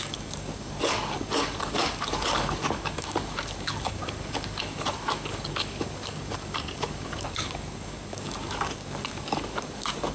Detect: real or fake fake